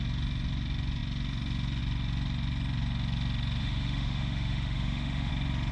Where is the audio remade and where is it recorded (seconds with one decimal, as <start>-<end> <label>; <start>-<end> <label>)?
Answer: 0.0-3.6 recorded; 3.6-5.3 remade; 5.3-5.7 recorded